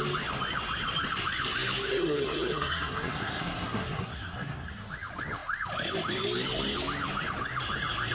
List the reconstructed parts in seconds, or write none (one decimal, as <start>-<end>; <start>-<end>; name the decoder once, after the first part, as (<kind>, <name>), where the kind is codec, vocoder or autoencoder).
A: 1.9-4.9 (codec, SNAC)